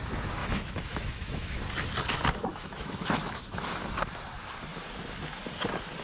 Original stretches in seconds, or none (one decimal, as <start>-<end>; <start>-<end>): 0.0-0.4; 1.6-2.5; 3.8-6.0